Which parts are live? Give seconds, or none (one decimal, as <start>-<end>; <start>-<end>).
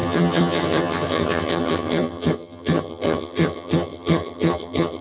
none